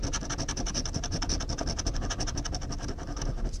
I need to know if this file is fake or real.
real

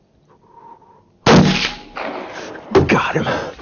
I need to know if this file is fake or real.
real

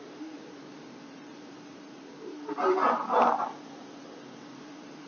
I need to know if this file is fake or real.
fake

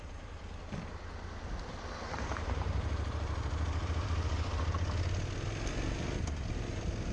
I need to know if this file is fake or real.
fake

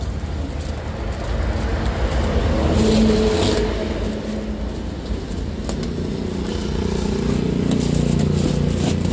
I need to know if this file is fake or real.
real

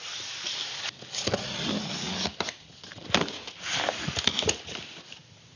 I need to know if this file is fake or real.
real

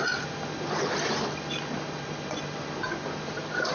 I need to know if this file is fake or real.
fake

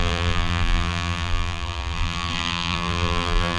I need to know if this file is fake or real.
fake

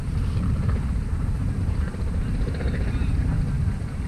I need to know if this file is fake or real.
fake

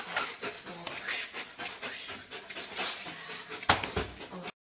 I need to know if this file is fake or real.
real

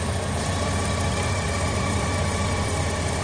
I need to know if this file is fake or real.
fake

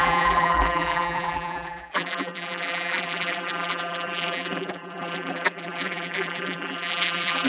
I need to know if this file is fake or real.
fake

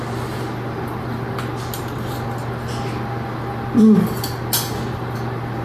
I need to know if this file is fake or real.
real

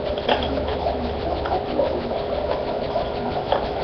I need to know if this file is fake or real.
real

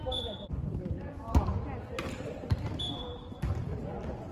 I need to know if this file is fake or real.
fake